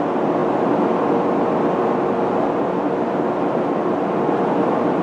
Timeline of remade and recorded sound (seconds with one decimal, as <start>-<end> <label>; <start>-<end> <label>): 0.0-5.0 recorded